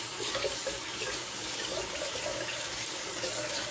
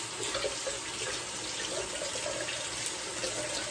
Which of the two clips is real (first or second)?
second